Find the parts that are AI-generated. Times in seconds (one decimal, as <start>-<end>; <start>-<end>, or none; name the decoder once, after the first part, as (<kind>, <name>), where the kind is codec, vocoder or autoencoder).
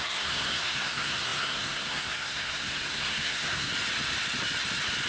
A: 0.0-3.7 (codec, SNAC)